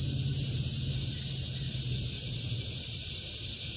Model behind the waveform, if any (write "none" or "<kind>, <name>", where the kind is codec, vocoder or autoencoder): none